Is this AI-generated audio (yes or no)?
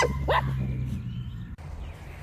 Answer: no